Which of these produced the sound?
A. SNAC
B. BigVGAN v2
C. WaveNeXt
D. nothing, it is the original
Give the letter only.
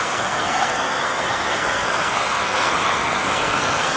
A